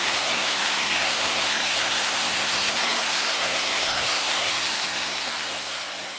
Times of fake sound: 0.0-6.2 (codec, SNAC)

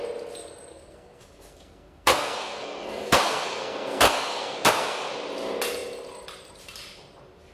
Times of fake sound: 0.7-5.1 (codec, SNAC)

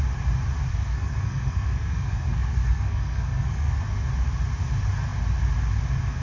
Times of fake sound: 0.7-3.8 (codec, SNAC)

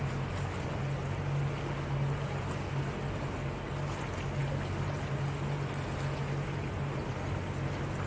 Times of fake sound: none

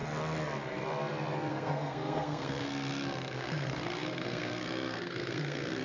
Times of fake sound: 1.5-5.8 (codec, SNAC)